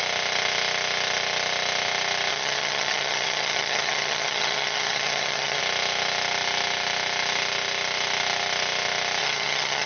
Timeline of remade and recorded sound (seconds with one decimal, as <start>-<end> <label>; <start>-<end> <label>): 0.0-2.3 recorded; 2.3-5.6 remade; 5.6-9.2 recorded; 9.2-9.9 remade